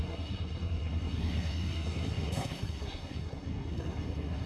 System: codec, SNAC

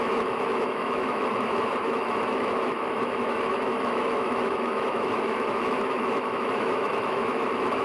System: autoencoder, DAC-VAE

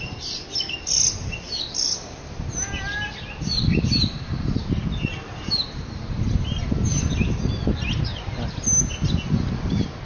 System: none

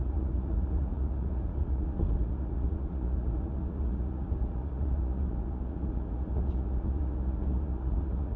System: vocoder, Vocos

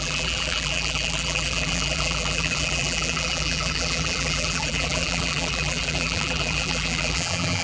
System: vocoder, BigVGAN v2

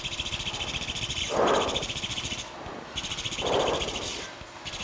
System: none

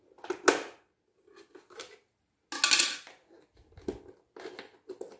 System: none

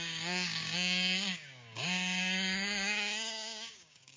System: codec, DAC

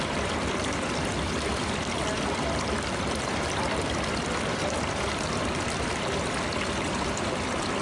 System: vocoder, BigVGAN v2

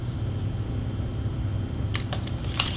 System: none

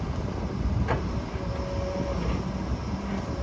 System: none